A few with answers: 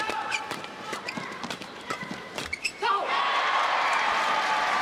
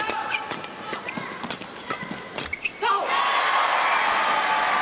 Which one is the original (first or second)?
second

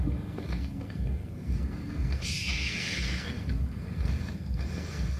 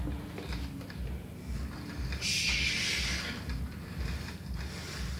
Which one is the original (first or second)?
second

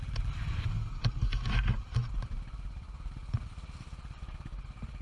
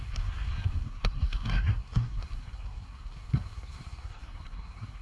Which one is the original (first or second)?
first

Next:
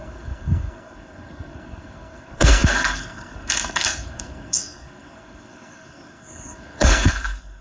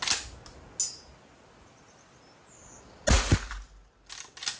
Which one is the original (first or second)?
second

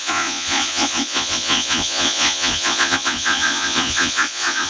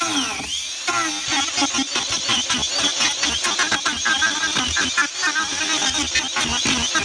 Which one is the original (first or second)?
second